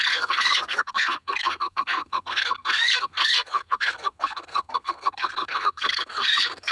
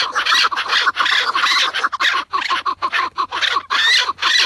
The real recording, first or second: second